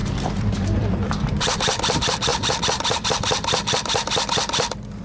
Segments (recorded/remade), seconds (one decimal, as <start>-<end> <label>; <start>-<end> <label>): 0.0-1.3 remade; 1.3-2.3 recorded; 2.3-5.0 remade